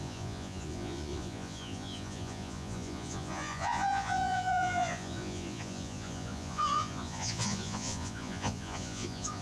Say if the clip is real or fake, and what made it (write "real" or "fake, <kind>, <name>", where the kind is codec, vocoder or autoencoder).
fake, vocoder, Vocos